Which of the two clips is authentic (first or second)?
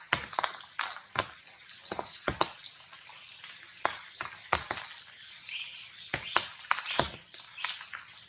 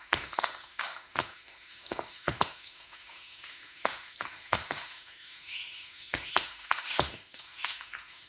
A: first